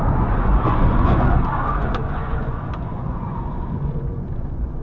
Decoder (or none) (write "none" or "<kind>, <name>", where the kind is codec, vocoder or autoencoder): vocoder, Vocos